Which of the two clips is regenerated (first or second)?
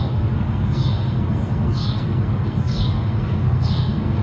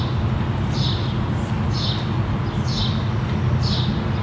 first